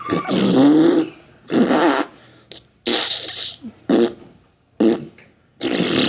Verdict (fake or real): real